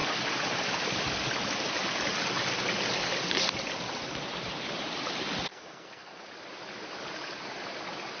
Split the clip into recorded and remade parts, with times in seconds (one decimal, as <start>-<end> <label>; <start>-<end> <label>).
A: 0.0-5.5 recorded; 5.5-6.2 remade; 6.2-8.2 recorded